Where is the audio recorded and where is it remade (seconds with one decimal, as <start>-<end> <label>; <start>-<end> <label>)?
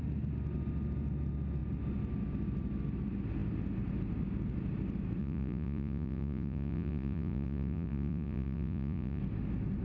0.0-5.2 recorded; 5.2-9.2 remade; 9.2-9.8 recorded